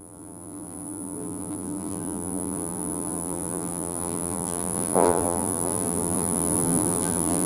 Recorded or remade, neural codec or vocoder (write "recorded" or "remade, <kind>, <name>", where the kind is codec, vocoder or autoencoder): remade, vocoder, BigVGAN v2